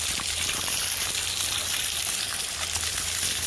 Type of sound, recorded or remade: recorded